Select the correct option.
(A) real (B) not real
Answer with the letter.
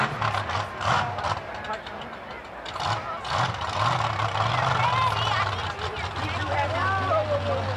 A